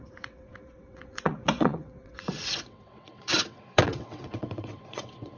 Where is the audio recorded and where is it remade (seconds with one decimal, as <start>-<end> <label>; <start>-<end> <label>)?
0.0-5.4 remade

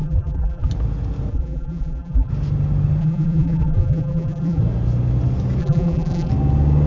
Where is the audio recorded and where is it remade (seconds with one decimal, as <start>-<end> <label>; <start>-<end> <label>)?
0.0-0.7 remade; 0.7-1.3 recorded; 1.3-2.3 remade; 2.3-3.0 recorded; 3.0-4.6 remade; 4.6-5.6 recorded; 5.6-6.3 remade; 6.3-6.9 recorded

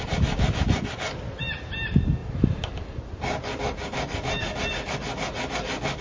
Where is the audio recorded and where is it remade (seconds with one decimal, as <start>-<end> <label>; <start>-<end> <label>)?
0.0-6.0 recorded

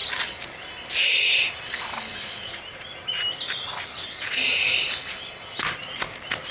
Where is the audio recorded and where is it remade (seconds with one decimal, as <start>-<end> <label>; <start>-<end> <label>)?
0.0-6.5 recorded

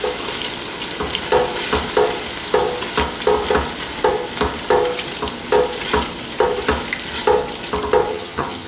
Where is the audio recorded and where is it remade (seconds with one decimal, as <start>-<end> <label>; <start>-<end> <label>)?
0.0-8.1 recorded; 8.1-8.7 remade

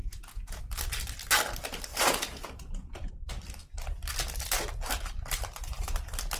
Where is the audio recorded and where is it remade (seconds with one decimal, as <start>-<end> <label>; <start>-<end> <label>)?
0.0-0.6 remade; 0.6-1.9 recorded; 1.9-3.1 remade; 3.1-6.4 recorded

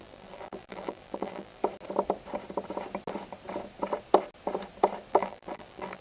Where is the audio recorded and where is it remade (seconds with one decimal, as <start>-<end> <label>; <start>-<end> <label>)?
0.0-1.6 remade; 1.6-5.1 recorded; 5.1-6.0 remade